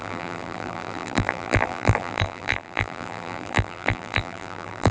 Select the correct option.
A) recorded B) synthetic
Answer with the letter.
B